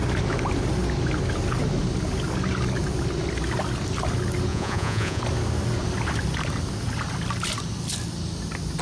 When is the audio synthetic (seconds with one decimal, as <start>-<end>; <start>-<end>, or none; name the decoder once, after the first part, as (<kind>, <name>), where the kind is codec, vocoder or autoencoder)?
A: 4.5-5.2 (vocoder, Vocos)